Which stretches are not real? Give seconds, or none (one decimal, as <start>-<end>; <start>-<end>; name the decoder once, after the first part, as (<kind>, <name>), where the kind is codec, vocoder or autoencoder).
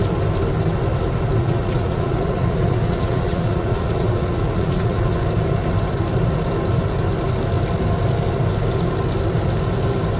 1.4-5.2 (vocoder, Vocos)